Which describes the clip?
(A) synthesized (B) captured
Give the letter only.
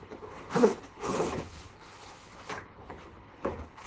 A